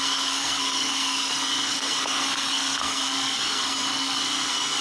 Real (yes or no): no